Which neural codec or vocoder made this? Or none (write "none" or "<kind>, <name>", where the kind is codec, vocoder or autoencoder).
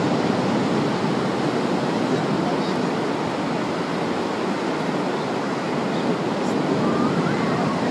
none